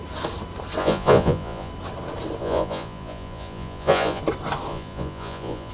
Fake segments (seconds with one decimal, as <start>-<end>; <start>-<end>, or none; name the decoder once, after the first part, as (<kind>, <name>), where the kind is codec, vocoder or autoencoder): 0.8-1.7 (vocoder, Vocos); 2.4-4.2; 4.7-5.7